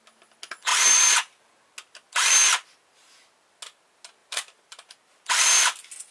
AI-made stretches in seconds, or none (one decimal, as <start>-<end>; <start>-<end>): 0.7-1.5; 4.2-4.9